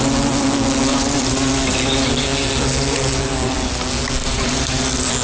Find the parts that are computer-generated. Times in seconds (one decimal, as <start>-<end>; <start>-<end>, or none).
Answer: 0.9-1.5; 4.2-4.8